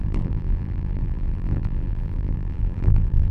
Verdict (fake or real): fake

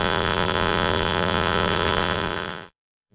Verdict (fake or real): fake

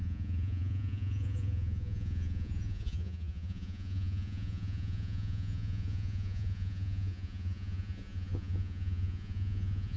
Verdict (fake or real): fake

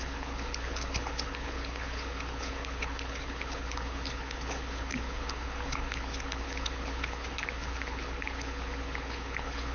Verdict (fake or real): fake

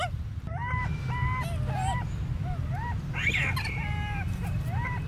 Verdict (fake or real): real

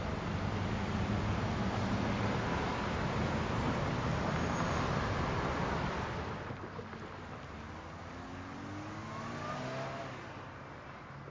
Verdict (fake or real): real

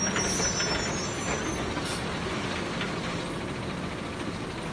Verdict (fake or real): real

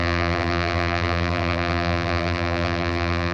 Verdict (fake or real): fake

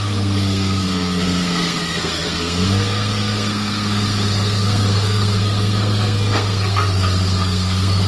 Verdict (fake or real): fake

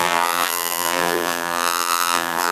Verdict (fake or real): fake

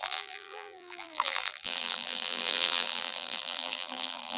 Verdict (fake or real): fake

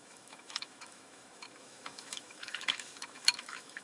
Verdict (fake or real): fake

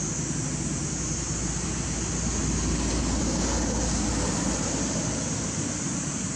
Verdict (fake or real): real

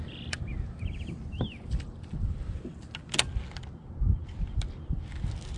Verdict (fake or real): real